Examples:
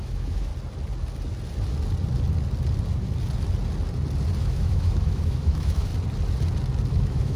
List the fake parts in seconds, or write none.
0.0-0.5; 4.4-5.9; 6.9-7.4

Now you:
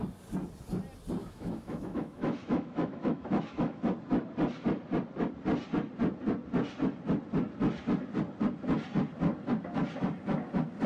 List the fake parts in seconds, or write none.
1.2-3.8

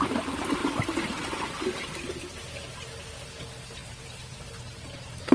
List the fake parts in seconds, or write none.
none

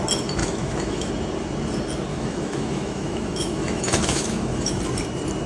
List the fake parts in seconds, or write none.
0.4-1.1; 2.1-4.8

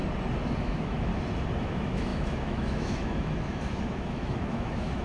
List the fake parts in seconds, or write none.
0.6-1.1; 1.6-5.0